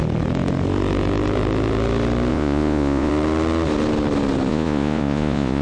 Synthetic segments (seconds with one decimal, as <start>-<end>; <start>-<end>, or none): 2.3-3.1; 4.5-5.6

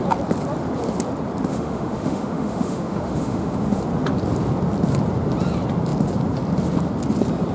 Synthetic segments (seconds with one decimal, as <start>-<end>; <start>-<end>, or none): 1.5-3.8

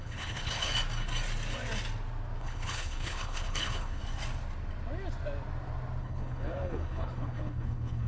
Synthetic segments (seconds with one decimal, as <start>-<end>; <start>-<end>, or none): 0.0-0.7; 2.4-4.0; 6.0-8.1